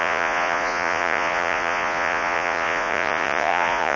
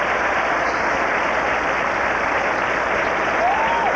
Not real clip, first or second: first